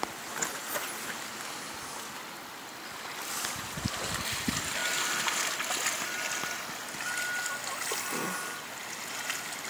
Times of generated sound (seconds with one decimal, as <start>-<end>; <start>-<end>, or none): none